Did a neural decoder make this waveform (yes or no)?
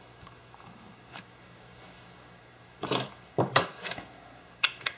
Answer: yes